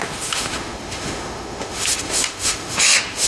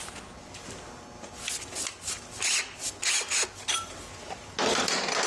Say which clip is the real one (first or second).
second